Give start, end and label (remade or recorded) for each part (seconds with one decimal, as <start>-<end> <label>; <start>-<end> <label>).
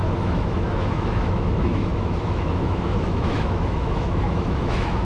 0.0-5.0 remade